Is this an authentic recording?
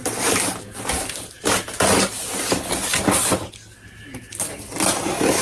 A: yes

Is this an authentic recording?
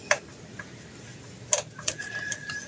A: yes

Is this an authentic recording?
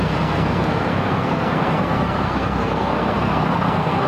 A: no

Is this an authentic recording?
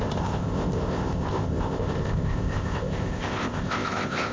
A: no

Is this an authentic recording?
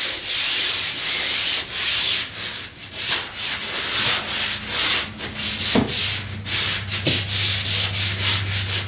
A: yes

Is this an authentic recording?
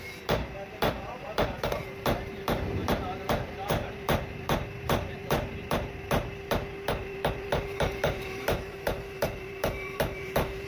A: no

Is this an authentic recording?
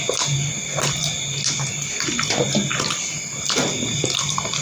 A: yes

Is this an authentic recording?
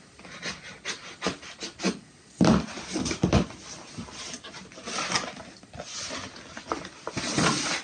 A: yes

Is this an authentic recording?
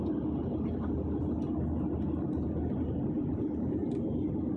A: yes